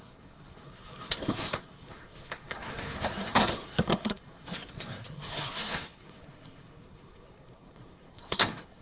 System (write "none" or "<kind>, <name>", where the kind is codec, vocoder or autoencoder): codec, SNAC